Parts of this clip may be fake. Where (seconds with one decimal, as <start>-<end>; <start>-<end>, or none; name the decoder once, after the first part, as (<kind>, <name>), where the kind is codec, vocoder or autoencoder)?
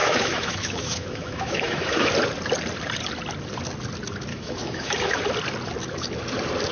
0.0-2.1 (autoencoder, DAC-VAE); 4.3-5.2